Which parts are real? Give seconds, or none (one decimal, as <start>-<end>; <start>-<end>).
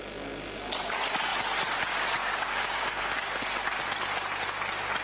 0.0-2.2; 3.4-5.0